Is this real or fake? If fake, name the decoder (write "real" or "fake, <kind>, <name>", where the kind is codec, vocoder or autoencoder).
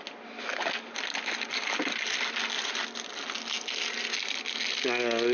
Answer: real